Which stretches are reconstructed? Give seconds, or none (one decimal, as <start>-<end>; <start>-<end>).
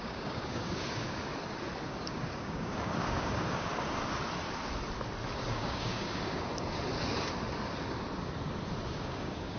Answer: 0.0-1.3; 1.9-3.7; 5.5-6.5; 8.9-9.6